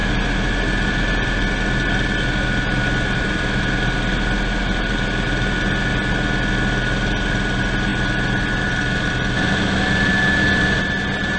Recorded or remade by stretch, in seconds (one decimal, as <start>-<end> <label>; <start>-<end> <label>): 0.0-11.4 recorded